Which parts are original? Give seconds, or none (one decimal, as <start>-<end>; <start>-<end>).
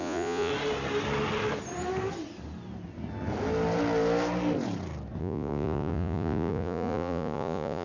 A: 0.5-5.2